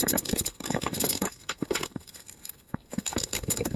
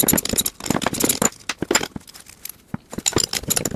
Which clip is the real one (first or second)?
second